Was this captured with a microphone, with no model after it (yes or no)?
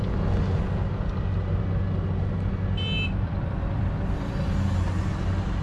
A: yes